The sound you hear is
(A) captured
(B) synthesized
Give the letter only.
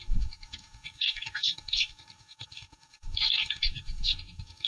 B